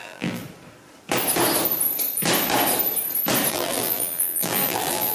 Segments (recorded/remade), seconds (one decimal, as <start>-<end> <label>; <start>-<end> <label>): 0.0-0.4 remade; 0.4-3.5 recorded; 3.5-5.1 remade